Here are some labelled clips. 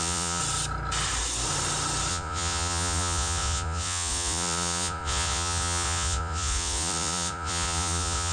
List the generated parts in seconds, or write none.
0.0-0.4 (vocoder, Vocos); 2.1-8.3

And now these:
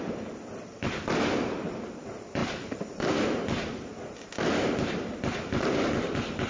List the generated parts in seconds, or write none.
none

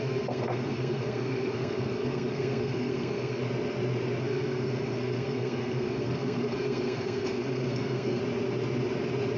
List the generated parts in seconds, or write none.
0.0-3.4 (codec, SNAC); 4.2-8.2

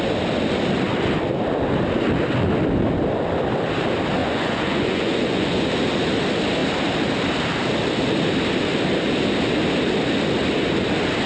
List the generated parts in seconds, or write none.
4.2-5.7 (vocoder, Vocos)

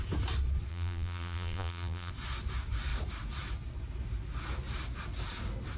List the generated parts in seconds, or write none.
0.7-2.1 (vocoder, BigVGAN v2)

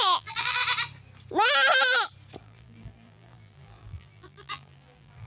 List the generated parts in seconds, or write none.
0.0-0.6 (vocoder, BigVGAN v2); 2.4-5.3